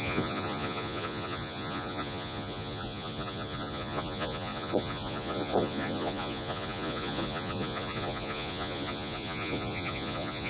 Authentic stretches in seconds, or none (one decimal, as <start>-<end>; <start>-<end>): none